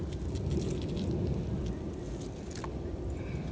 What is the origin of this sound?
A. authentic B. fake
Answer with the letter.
A